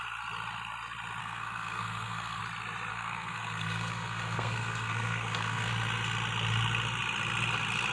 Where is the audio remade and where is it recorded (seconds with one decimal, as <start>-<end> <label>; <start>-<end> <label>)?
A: 0.0-1.2 recorded; 1.2-2.4 remade; 2.4-2.9 recorded; 2.9-5.7 remade; 5.7-7.9 recorded